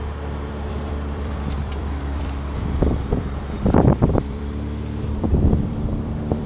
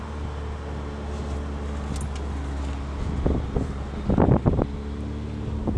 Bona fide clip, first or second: second